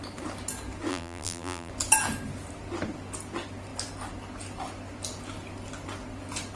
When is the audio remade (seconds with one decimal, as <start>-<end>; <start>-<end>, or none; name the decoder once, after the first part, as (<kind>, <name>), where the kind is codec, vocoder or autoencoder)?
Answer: 0.9-1.7 (vocoder, BigVGAN v2)